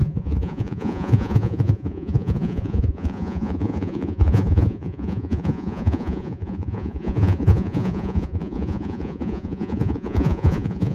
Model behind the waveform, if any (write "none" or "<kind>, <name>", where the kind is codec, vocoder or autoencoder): vocoder, Vocos